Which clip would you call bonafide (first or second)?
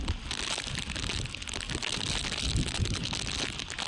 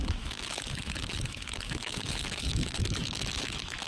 first